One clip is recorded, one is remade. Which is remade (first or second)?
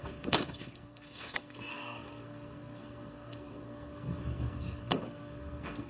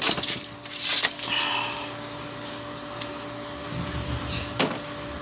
first